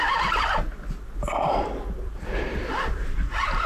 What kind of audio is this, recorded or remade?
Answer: remade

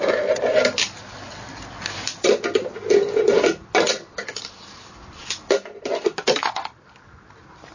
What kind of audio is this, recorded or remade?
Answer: recorded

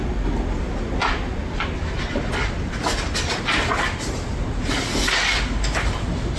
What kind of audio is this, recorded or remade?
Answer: recorded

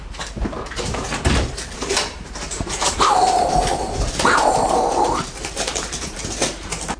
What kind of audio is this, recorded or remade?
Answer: remade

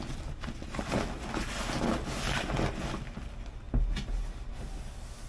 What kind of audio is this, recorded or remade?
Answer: recorded